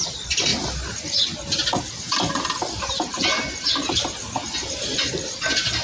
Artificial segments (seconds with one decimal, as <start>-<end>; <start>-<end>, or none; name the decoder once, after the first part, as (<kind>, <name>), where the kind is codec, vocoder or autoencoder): 0.0-0.5 (vocoder, BigVGAN v2); 2.8-5.8